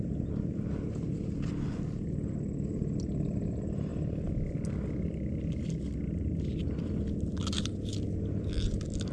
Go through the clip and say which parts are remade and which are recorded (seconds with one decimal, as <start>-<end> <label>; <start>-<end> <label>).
0.0-9.1 recorded